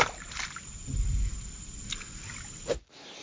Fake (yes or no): no